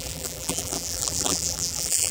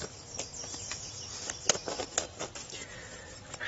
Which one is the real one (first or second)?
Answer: second